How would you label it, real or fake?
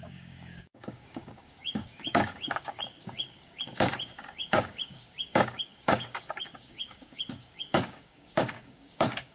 fake